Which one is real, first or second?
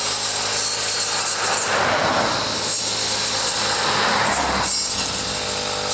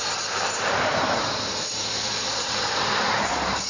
first